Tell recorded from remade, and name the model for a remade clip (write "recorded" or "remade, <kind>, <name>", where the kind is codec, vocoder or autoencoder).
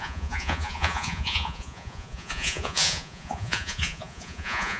remade, vocoder, Vocos